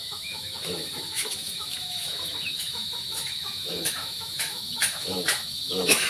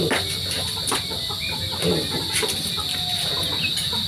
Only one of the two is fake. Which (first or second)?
first